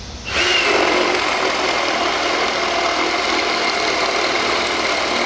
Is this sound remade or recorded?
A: recorded